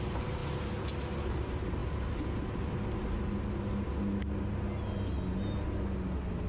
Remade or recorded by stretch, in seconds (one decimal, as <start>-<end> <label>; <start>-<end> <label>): 0.0-6.5 recorded